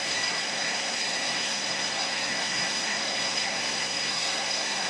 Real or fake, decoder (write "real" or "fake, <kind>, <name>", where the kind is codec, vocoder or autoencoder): fake, codec, SNAC